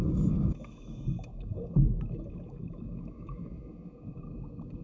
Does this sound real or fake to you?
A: fake